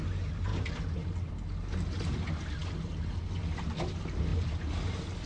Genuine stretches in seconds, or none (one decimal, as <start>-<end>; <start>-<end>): 0.0-4.3